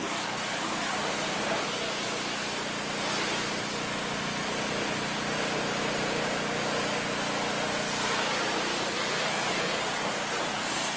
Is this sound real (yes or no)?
yes